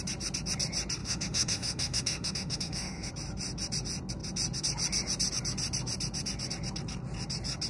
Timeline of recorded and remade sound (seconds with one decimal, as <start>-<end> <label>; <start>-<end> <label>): 0.0-1.0 recorded; 1.0-3.1 remade; 3.1-7.7 recorded